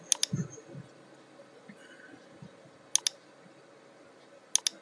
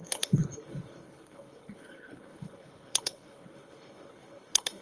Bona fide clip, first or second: first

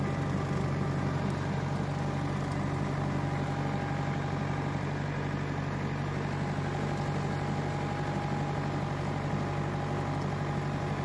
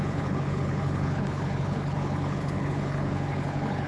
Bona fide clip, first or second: first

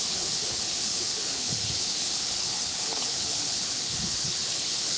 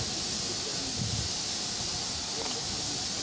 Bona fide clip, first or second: second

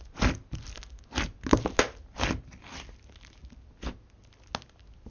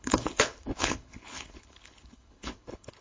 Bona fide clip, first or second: first